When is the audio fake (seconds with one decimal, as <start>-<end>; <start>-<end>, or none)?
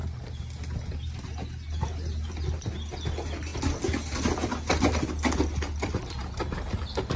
none